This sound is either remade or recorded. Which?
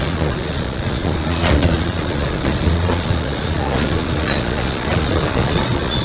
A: remade